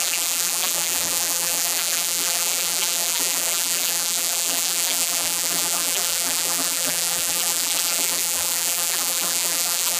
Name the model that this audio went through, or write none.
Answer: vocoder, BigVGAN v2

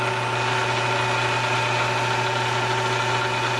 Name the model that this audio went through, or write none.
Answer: none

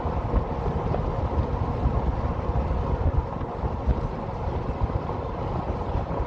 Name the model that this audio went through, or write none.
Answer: none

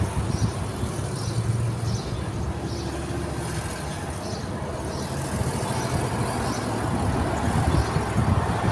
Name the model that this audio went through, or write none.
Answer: none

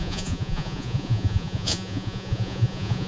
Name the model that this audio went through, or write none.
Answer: vocoder, Vocos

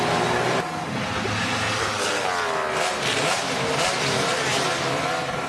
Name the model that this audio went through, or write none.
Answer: none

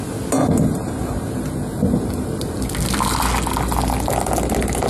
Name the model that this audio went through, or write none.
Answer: none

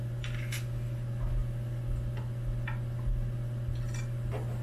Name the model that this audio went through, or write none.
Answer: none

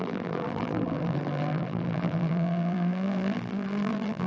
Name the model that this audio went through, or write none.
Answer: vocoder, BigVGAN v2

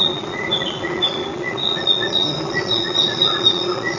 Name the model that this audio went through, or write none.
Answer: vocoder, Vocos